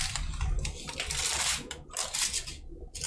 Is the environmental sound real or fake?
real